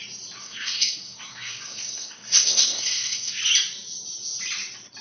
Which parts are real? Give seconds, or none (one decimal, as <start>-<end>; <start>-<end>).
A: 0.0-0.4; 3.4-5.0

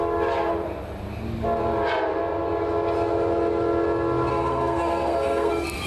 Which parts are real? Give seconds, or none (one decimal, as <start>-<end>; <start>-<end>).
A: 0.0-4.3; 5.5-5.9